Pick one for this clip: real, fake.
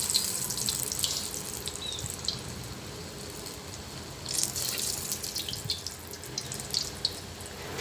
real